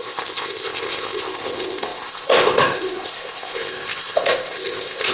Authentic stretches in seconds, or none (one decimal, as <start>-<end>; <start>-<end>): none